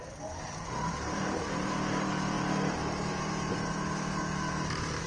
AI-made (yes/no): yes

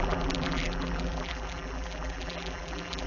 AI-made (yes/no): yes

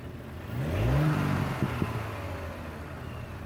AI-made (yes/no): no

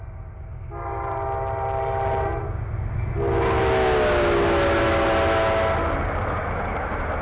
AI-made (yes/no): no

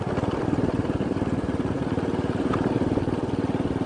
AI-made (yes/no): no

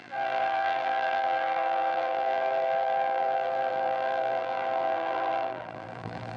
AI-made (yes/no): yes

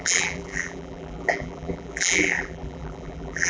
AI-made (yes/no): yes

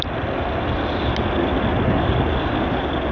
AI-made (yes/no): no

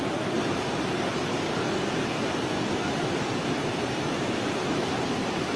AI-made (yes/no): yes